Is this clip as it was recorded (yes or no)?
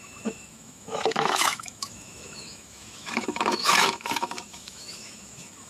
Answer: no